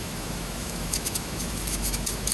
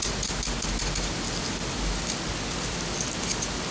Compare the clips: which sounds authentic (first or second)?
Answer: second